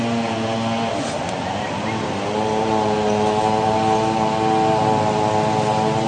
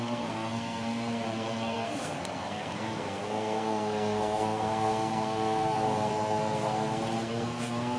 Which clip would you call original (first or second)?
first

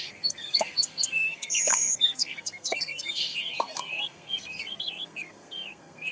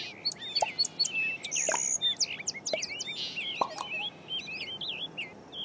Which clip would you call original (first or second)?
second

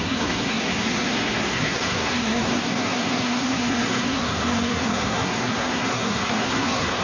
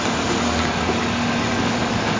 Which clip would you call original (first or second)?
second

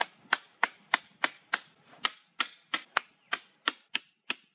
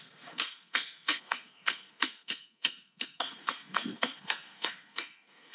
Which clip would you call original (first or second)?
first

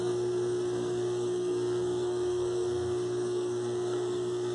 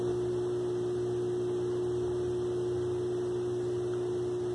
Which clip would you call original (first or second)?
second